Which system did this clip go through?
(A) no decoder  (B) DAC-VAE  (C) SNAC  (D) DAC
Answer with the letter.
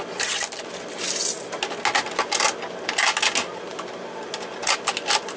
A